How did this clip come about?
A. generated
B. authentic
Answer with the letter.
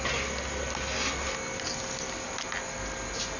B